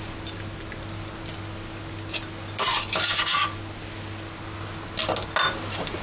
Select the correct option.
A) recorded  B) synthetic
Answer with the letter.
A